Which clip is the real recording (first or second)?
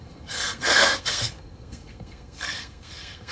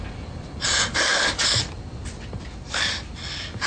second